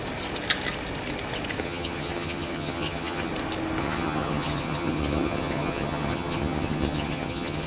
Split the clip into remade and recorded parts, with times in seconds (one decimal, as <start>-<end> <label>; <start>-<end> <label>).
0.0-1.6 recorded; 1.6-3.3 remade; 3.3-3.8 recorded; 3.8-7.7 remade